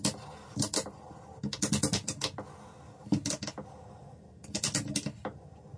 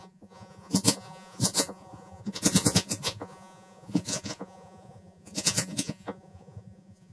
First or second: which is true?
first